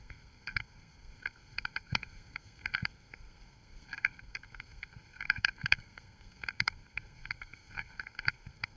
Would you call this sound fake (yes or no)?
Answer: yes